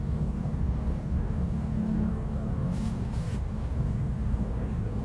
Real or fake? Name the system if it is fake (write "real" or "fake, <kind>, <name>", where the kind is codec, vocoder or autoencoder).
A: fake, codec, DAC